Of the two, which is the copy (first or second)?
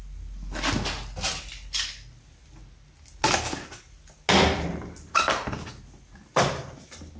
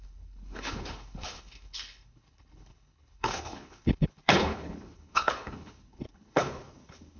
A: second